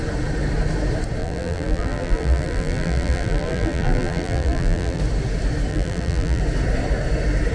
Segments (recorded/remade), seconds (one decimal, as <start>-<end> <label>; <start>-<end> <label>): 0.0-1.2 recorded; 1.2-5.0 remade; 5.0-5.7 recorded; 5.7-6.4 remade; 6.4-7.5 recorded